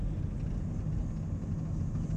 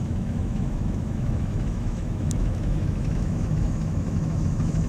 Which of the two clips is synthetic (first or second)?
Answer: second